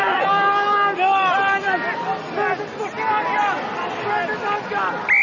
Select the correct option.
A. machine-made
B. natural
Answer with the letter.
B